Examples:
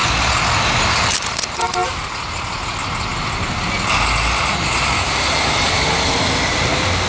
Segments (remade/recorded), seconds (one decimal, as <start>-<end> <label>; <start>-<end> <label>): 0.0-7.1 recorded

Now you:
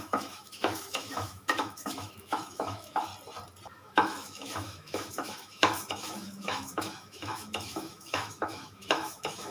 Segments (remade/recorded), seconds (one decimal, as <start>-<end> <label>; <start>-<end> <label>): 0.0-3.1 remade; 3.1-3.7 recorded; 3.7-9.5 remade

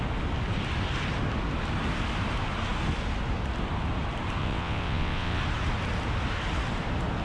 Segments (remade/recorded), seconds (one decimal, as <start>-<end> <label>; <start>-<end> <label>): 0.0-4.4 recorded; 4.4-5.4 remade; 5.4-7.2 recorded

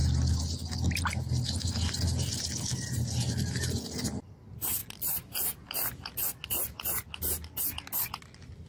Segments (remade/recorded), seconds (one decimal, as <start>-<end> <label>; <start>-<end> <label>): 0.0-8.7 recorded

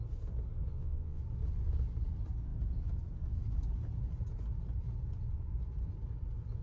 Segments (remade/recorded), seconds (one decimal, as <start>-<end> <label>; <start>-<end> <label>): 0.0-0.7 recorded; 0.7-1.2 remade; 1.2-6.6 recorded